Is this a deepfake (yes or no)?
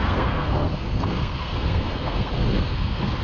yes